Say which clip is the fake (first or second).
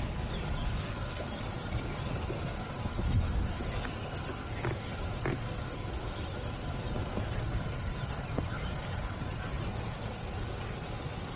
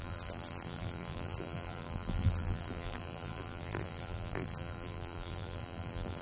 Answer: second